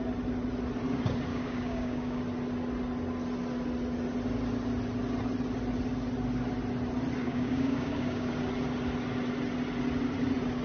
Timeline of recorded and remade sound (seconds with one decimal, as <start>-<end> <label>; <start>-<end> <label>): 0.0-1.3 recorded; 1.3-2.2 remade; 2.2-7.2 recorded; 7.2-8.3 remade; 8.3-10.6 recorded